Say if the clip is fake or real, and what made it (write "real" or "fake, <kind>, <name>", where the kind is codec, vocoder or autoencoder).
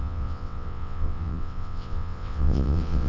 fake, vocoder, WaveNeXt